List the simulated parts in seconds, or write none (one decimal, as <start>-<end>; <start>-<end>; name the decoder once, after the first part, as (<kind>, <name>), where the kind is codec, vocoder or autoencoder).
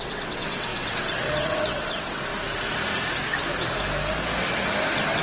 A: 0.0-2.3 (vocoder, WaveNeXt)